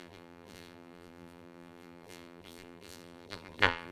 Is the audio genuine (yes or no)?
no